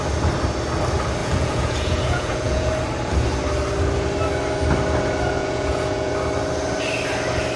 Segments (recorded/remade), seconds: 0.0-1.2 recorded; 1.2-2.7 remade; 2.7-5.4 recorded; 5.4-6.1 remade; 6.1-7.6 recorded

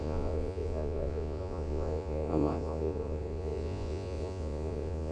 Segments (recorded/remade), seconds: 0.0-5.1 remade

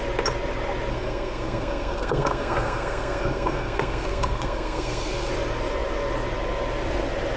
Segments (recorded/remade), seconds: 0.0-0.9 recorded; 0.9-5.3 remade; 5.3-7.4 recorded

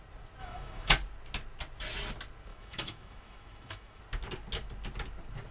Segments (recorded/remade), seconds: 0.0-0.4 recorded; 0.4-0.9 remade; 0.9-2.5 recorded; 2.5-4.0 remade; 4.0-5.5 recorded

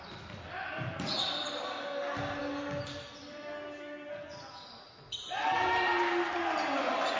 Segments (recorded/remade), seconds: 0.0-7.2 recorded